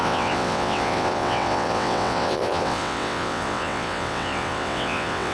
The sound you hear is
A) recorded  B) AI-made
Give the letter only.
B